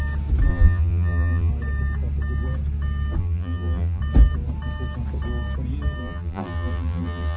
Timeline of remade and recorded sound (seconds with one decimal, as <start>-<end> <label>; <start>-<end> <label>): 0.0-0.5 recorded; 0.5-1.5 remade; 1.5-3.2 recorded; 3.2-4.0 remade; 4.0-6.0 recorded; 6.0-7.4 remade